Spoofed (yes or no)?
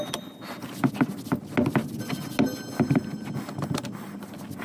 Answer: no